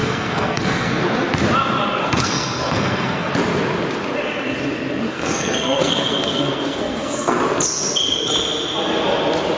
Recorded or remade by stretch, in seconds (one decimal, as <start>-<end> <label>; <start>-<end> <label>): 0.0-1.0 remade; 1.0-2.0 recorded; 2.0-3.3 remade; 3.3-5.1 recorded; 5.1-7.4 remade; 7.4-9.6 recorded